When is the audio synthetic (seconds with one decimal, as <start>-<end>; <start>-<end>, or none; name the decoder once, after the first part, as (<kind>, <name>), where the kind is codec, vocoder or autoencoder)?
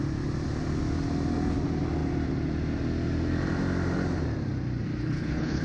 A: 5.0-5.6 (codec, HILCodec)